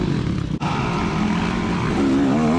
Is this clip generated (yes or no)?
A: no